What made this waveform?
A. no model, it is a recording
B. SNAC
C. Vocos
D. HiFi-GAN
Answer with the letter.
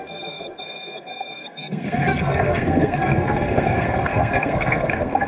B